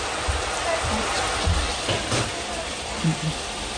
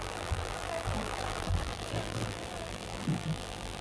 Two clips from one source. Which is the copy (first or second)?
second